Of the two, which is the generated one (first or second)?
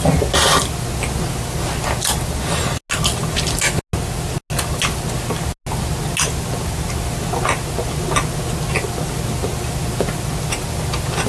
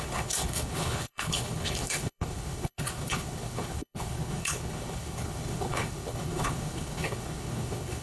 second